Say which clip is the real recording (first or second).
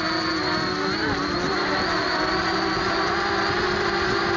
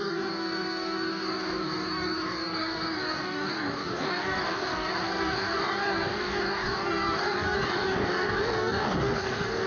first